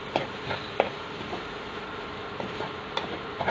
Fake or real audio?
fake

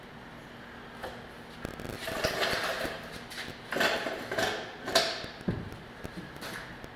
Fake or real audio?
real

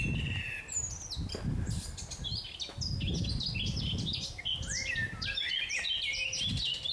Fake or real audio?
real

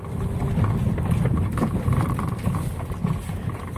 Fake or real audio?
real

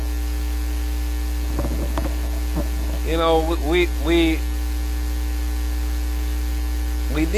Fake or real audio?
real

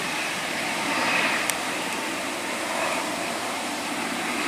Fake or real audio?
fake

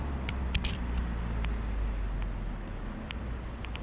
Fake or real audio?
real